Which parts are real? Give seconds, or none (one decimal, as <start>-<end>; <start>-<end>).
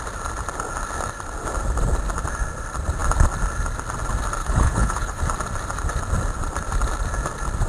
0.0-4.4; 5.2-7.7